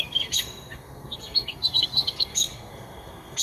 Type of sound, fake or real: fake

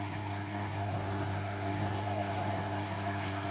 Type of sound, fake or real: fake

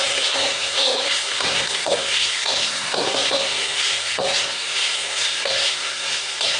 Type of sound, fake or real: fake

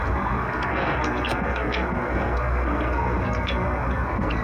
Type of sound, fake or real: fake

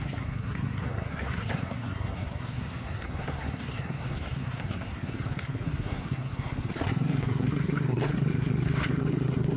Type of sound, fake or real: fake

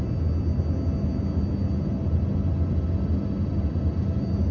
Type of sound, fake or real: real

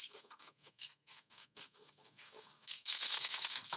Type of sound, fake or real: fake